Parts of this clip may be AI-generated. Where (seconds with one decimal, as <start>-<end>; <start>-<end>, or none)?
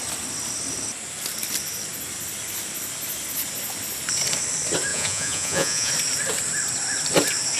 4.9-5.9